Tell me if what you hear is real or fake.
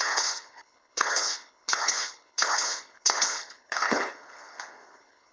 fake